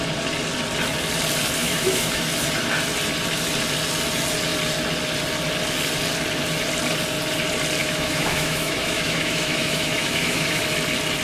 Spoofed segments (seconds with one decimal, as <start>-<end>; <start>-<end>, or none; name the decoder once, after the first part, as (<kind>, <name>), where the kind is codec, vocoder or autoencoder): 1.6-2.2 (autoencoder, DAC-VAE); 7.8-10.6